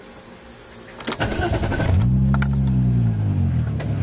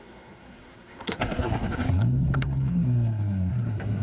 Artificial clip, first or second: second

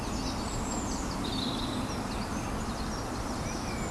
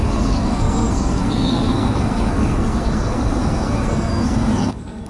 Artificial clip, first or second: second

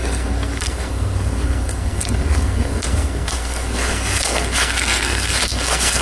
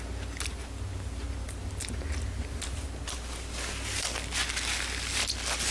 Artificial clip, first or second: first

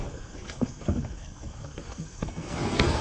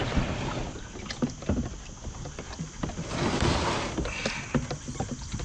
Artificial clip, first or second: first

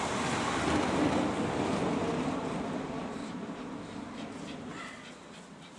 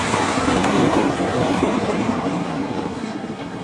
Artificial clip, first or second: second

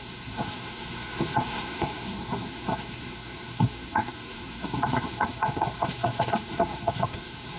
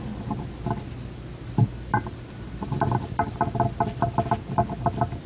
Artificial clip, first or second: first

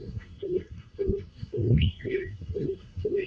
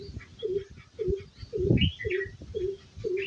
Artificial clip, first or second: first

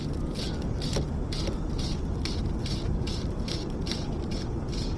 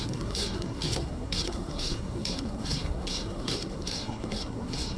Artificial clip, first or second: second